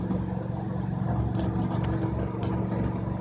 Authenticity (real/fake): real